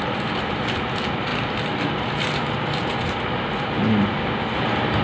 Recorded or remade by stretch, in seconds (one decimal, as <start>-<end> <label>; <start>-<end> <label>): 0.0-5.0 recorded